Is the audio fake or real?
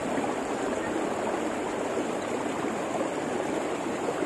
real